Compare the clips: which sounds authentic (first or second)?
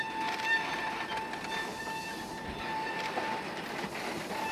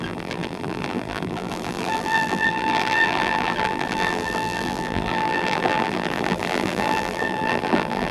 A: first